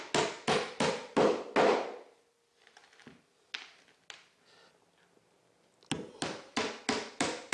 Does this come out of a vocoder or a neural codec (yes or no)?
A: no